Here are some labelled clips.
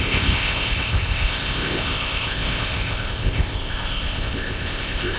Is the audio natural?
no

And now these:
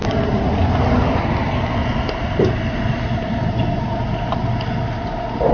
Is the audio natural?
yes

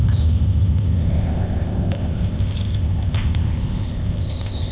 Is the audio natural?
no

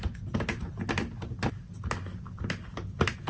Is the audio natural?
yes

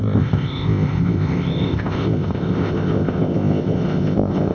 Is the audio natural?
no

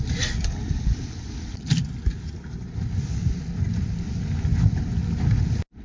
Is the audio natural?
yes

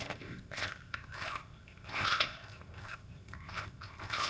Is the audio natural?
no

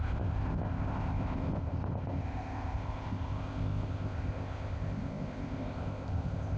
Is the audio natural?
no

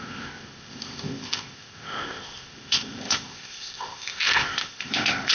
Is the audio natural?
no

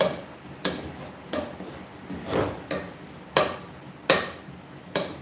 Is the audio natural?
yes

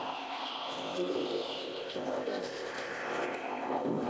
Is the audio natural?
no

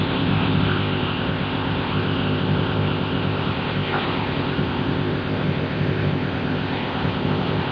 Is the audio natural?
no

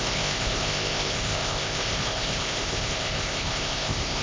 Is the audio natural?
no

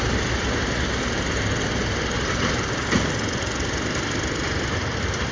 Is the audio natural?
yes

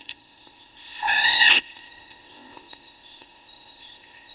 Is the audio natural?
no